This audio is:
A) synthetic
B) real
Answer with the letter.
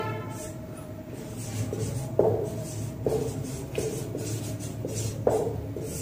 B